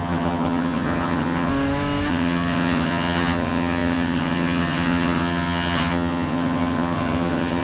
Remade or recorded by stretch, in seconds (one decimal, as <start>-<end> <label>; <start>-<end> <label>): 0.0-1.5 remade; 1.5-2.1 recorded; 2.1-7.6 remade

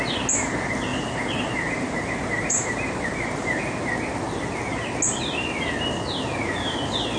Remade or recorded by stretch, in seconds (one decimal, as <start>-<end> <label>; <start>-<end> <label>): 0.0-0.9 recorded; 0.9-3.6 remade; 3.6-7.2 recorded